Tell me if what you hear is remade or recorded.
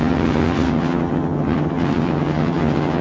remade